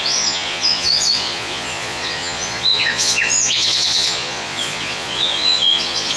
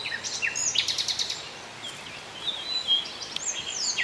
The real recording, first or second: second